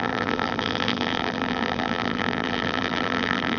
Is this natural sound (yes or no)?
no